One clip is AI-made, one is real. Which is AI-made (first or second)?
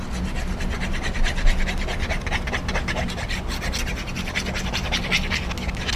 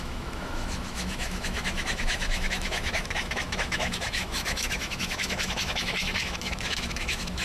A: second